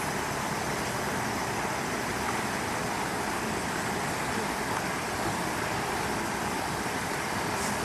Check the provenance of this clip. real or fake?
real